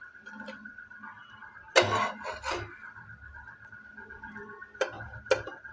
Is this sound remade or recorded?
recorded